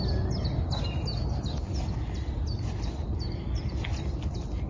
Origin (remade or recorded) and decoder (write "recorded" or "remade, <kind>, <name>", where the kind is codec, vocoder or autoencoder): recorded